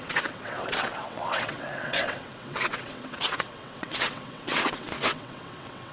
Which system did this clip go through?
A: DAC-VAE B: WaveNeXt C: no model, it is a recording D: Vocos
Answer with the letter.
B